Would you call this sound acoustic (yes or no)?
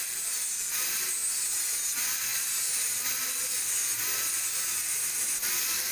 yes